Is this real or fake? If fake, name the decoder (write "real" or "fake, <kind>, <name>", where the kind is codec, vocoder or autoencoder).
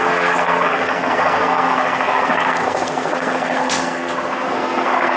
fake, codec, SNAC